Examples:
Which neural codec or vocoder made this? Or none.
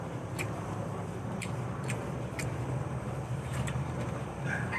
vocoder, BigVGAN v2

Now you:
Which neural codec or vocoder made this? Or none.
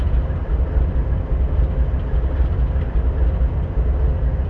none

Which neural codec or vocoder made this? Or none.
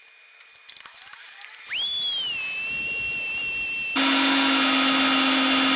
none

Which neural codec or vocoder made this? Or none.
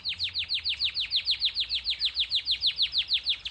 none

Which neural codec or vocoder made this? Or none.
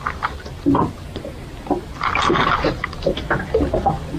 none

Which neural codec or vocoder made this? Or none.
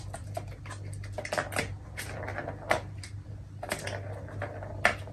none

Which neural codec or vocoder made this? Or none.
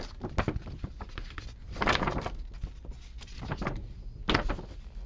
none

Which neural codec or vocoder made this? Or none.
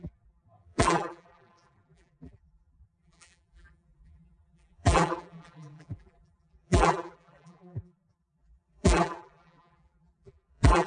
vocoder, BigVGAN v2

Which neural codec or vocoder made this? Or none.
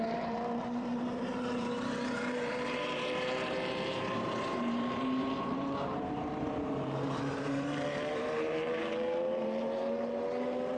vocoder, BigVGAN v2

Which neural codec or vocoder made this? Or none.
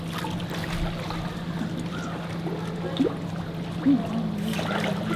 none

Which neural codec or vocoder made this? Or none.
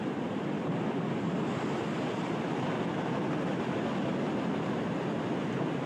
none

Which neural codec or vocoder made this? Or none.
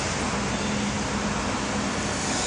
none